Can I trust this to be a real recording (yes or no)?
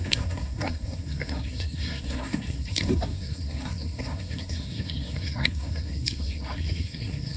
no